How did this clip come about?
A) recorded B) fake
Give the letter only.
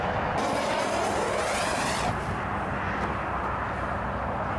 A